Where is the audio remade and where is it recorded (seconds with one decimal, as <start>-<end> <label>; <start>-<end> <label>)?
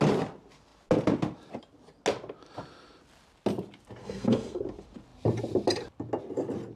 0.0-4.0 recorded; 4.0-4.6 remade; 4.6-6.8 recorded